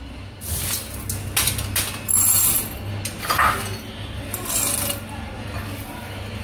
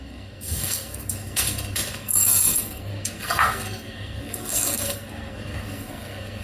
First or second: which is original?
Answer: first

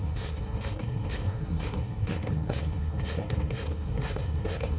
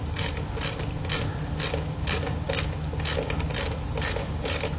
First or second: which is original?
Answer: second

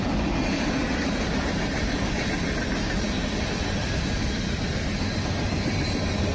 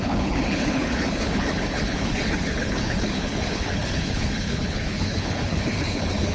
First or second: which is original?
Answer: first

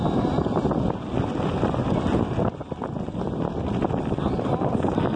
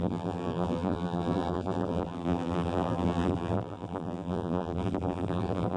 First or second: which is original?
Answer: first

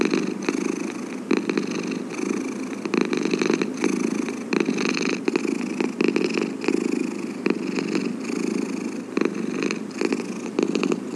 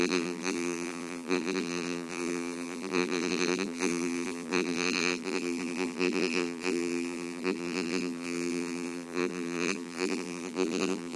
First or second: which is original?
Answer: first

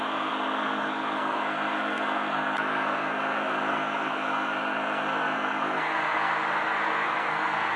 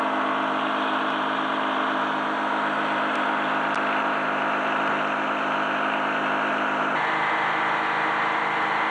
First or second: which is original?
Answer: second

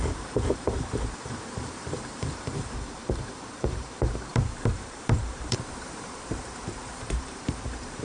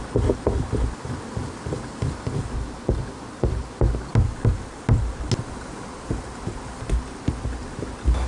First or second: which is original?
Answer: second